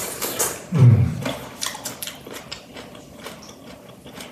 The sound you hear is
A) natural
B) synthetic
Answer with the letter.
B